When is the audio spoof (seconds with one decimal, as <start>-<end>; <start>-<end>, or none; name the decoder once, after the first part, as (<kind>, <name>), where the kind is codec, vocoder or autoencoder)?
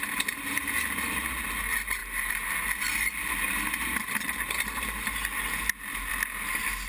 none